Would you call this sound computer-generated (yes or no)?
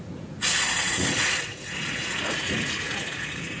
yes